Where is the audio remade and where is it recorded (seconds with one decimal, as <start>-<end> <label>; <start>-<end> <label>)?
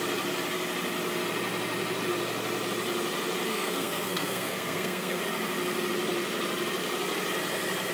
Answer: 0.0-3.5 recorded; 3.5-5.2 remade; 5.2-7.9 recorded